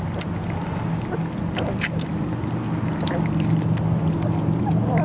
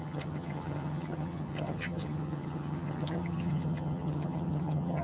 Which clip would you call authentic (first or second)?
first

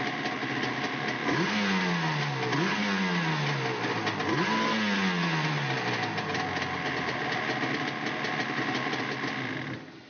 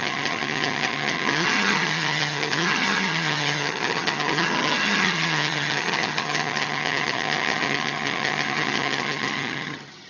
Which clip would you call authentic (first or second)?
first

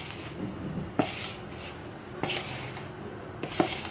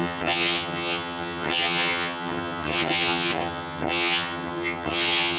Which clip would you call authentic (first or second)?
first